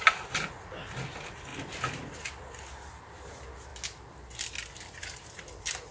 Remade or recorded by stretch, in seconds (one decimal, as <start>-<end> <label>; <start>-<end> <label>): 0.0-5.9 recorded